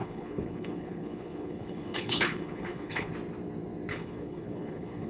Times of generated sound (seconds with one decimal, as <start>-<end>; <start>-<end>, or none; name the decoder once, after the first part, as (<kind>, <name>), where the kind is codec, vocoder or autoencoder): 0.0-3.1 (codec, HILCodec); 3.9-5.1